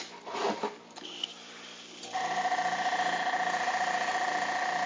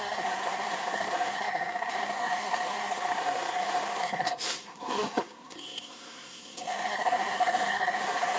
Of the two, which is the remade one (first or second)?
second